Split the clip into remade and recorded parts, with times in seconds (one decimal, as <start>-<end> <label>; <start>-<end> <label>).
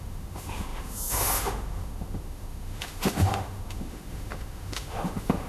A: 0.0-5.5 remade